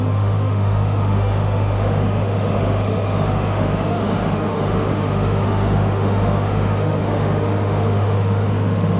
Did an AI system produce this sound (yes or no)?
yes